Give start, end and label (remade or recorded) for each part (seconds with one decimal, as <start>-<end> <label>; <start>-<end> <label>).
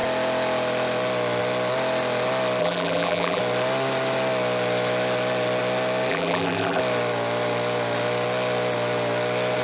0.0-2.6 recorded; 2.6-3.4 remade; 3.4-6.1 recorded; 6.1-6.8 remade; 6.8-9.6 recorded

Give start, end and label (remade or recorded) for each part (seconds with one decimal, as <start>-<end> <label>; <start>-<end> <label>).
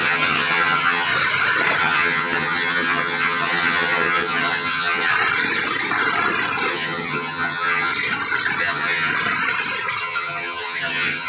0.0-1.1 remade; 1.1-1.8 recorded; 1.8-5.1 remade; 5.1-6.7 recorded; 6.7-7.9 remade; 7.9-8.6 recorded; 8.6-9.1 remade; 9.1-10.0 recorded; 10.0-11.3 remade